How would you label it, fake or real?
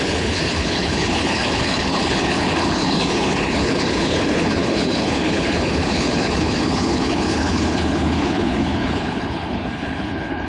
fake